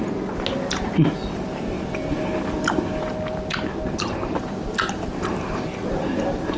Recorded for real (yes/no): yes